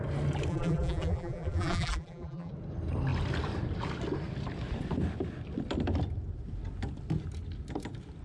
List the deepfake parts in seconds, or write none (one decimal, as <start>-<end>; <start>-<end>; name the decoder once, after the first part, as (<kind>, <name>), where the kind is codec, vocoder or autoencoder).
0.5-2.5 (vocoder, BigVGAN v2)